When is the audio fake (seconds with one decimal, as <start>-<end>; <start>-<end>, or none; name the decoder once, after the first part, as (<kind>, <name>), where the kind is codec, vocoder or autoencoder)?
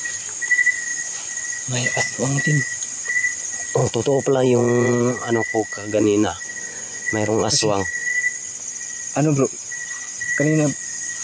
0.9-3.1 (vocoder, Vocos); 3.8-7.3